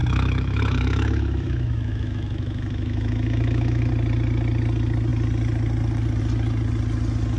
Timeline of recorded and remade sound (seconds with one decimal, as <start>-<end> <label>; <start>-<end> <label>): 0.0-3.9 remade; 3.9-7.4 recorded